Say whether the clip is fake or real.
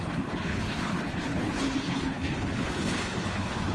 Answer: fake